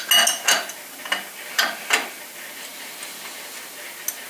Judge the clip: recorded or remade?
recorded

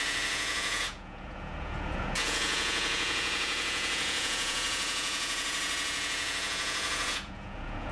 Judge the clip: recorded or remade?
remade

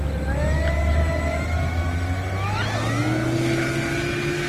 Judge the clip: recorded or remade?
recorded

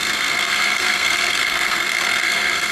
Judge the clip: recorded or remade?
remade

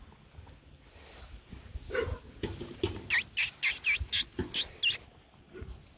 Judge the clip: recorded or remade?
recorded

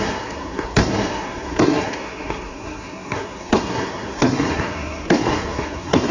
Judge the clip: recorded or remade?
remade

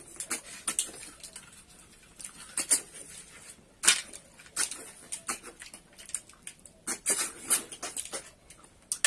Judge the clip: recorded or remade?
recorded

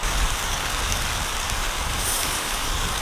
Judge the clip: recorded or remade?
remade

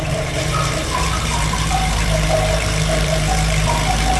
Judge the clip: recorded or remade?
remade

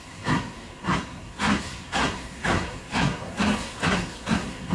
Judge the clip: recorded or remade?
remade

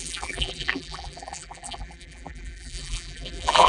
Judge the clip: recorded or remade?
remade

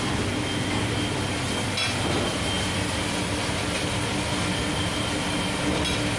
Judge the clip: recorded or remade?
recorded